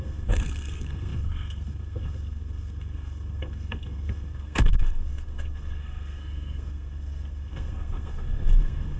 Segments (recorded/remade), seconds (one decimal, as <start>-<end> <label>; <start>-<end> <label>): 0.0-9.0 remade